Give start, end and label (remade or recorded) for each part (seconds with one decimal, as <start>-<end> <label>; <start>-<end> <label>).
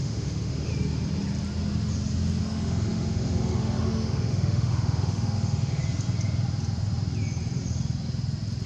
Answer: 0.0-0.7 remade; 0.7-2.4 recorded; 2.4-5.8 remade; 5.8-8.7 recorded